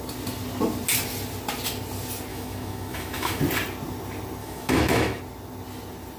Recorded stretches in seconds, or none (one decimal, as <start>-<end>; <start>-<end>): 0.0-2.3; 3.4-4.4; 5.2-6.2